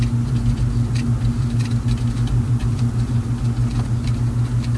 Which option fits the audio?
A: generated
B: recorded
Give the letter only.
B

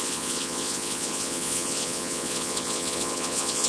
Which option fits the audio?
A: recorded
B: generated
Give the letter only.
B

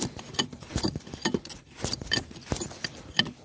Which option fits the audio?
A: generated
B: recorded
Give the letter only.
A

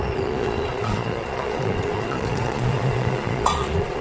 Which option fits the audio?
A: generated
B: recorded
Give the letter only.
A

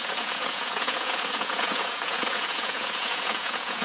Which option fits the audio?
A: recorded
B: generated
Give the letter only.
B